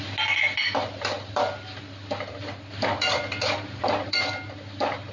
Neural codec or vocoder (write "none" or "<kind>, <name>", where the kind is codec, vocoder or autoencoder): vocoder, BigVGAN v2